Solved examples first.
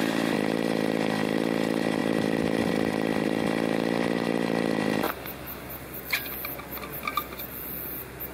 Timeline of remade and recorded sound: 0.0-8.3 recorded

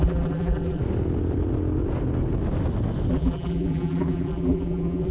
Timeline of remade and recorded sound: 0.0-0.8 remade; 0.8-3.1 recorded; 3.1-5.1 remade